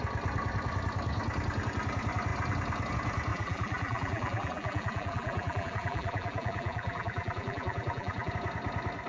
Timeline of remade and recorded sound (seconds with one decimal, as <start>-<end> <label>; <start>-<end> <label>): 0.0-3.3 recorded; 3.3-8.3 remade; 8.3-9.1 recorded